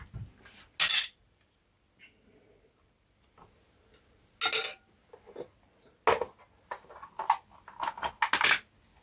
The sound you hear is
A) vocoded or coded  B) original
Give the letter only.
B